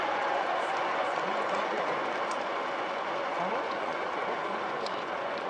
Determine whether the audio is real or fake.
fake